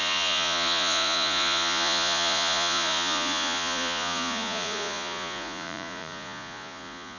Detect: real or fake fake